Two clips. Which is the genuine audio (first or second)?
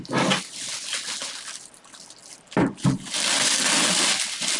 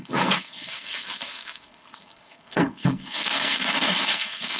first